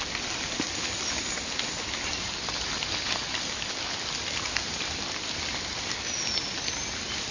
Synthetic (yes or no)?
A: no